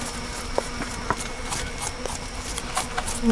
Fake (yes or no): no